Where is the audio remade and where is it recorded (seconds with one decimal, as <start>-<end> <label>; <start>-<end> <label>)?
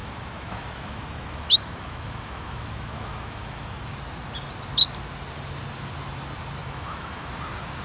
0.0-3.9 remade; 3.9-6.6 recorded; 6.6-7.3 remade; 7.3-7.8 recorded